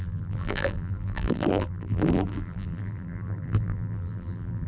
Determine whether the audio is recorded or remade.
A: remade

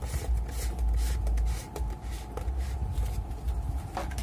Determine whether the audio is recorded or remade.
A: recorded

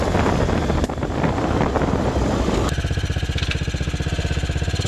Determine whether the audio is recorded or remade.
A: recorded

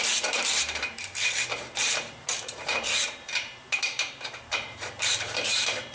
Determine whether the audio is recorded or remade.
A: remade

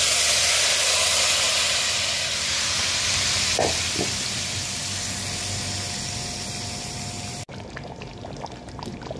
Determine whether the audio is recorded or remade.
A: recorded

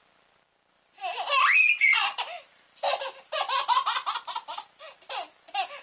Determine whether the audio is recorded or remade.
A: recorded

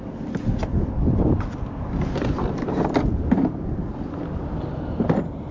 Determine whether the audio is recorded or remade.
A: recorded